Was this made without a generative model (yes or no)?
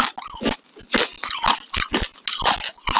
yes